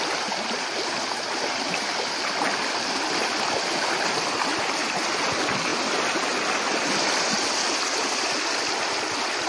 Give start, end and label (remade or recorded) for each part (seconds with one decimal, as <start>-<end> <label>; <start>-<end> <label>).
0.0-9.5 recorded